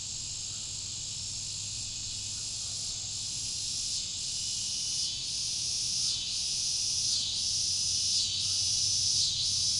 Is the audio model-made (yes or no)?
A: no